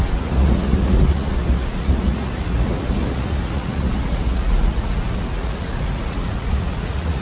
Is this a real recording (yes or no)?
no